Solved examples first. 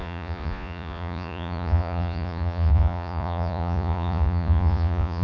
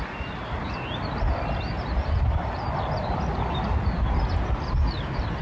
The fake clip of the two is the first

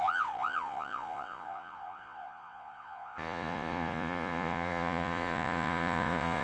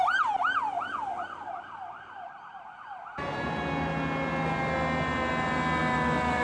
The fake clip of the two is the first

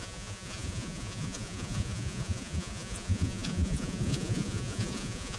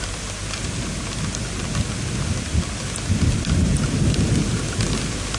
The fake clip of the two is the first